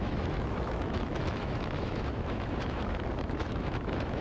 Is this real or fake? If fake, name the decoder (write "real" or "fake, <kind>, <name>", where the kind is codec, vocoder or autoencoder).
fake, autoencoder, DAC-VAE